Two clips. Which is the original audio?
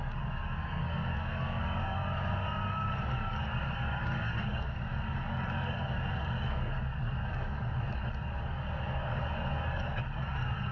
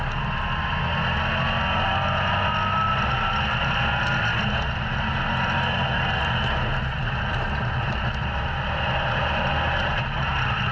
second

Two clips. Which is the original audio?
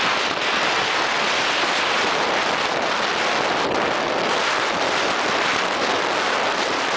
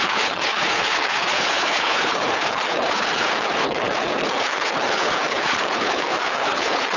first